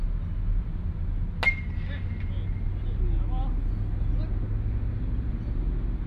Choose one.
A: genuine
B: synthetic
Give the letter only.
A